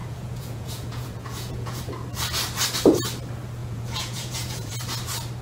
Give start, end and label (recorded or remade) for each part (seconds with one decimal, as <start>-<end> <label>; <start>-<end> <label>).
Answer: 0.0-1.8 remade; 1.8-3.6 recorded; 3.6-4.7 remade; 4.7-5.4 recorded